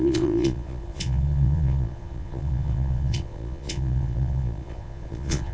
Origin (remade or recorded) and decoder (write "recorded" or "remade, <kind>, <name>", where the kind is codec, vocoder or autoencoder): remade, vocoder, Vocos